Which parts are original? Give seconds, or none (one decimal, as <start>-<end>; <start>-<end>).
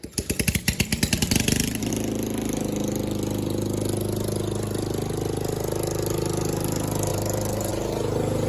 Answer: 0.0-7.1; 7.7-8.5